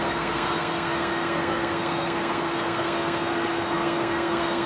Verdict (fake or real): fake